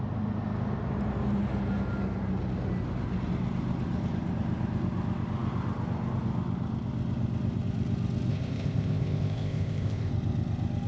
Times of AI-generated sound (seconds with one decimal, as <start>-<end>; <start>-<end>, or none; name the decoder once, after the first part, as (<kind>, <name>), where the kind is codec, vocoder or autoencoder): 8.3-10.1 (codec, ZipCodec)